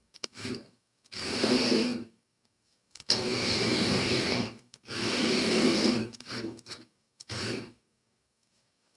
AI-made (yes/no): yes